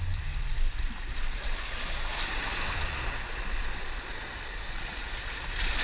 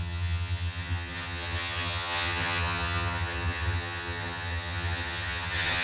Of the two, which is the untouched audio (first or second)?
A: first